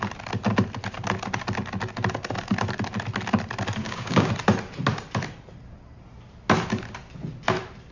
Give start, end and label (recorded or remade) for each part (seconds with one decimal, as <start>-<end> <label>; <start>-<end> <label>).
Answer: 0.0-3.8 recorded; 3.8-4.3 remade; 4.3-7.9 recorded